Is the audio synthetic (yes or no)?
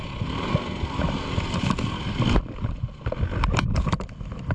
no